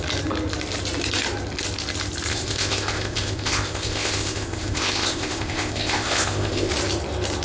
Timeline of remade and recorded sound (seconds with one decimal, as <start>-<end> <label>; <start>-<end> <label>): 0.0-2.3 recorded; 2.3-6.7 remade; 6.7-7.4 recorded